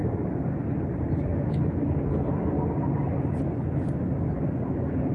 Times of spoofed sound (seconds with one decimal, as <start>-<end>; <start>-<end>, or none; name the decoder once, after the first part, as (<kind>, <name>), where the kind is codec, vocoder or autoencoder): none